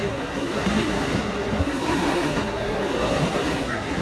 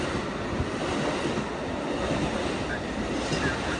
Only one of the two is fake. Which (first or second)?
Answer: first